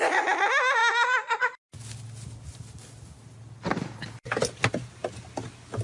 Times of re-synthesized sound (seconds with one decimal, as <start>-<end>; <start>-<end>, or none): none